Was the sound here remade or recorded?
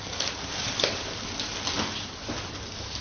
recorded